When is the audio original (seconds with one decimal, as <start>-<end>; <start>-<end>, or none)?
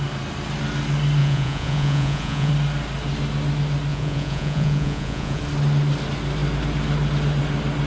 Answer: 0.0-1.2; 2.5-3.9; 5.4-7.9